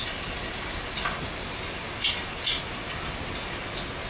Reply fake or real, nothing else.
real